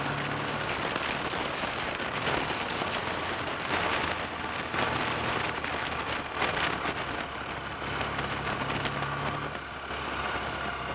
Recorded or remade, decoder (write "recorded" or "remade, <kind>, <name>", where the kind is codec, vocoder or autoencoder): recorded